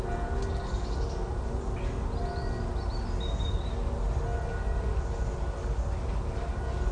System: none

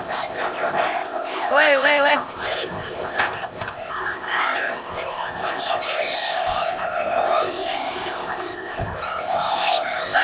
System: codec, ZipCodec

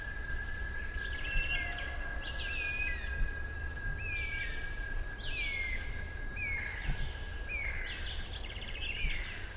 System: none